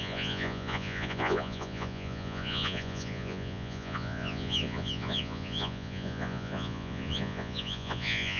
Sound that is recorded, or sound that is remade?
remade